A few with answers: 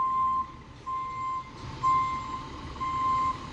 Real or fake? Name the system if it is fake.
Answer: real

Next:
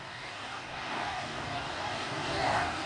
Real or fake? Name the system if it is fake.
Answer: fake, codec, DAC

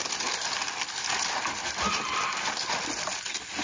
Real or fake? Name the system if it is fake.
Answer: real